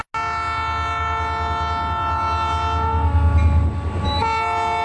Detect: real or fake real